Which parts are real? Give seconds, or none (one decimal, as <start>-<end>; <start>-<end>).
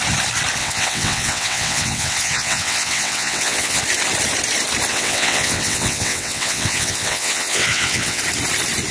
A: 0.0-0.6; 3.8-4.9; 8.2-8.9